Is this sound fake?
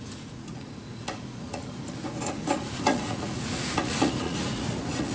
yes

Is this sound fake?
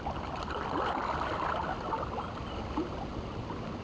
no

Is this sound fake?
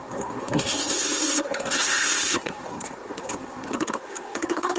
yes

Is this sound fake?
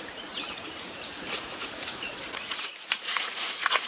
yes